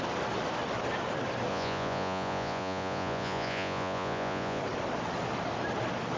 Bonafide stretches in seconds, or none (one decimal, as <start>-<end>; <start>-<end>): 0.0-1.5; 4.6-6.2